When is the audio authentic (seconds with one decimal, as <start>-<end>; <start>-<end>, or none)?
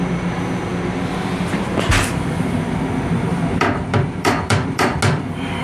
0.0-3.3; 5.0-5.6